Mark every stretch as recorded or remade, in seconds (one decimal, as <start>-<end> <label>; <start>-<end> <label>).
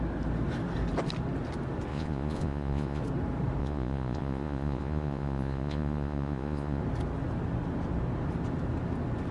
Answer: 0.0-1.9 recorded; 1.9-3.0 remade; 3.0-3.6 recorded; 3.6-6.8 remade; 6.8-9.3 recorded